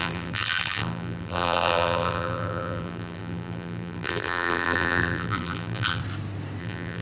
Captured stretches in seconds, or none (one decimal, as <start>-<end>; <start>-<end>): 6.0-6.6